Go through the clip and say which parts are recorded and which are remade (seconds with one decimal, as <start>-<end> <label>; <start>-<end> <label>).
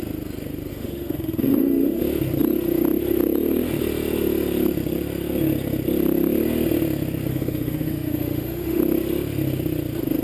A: 0.0-0.7 recorded; 0.7-2.0 remade; 2.0-7.3 recorded; 7.3-8.8 remade; 8.8-10.2 recorded